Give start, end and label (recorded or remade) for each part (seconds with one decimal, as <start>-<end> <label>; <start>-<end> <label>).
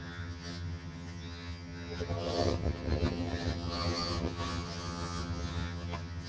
0.0-6.3 remade